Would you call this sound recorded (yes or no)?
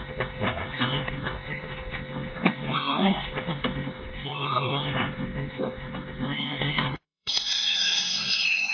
no